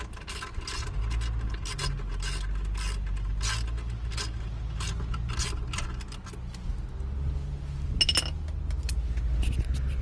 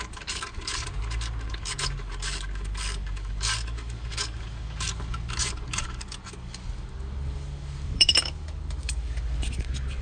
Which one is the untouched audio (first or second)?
first